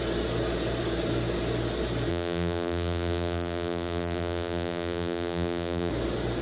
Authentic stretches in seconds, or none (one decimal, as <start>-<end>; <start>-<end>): 0.0-2.1; 5.9-6.4